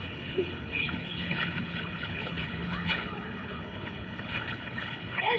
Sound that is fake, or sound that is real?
fake